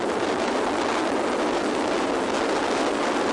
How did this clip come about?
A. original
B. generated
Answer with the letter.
A